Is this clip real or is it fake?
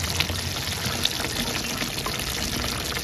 real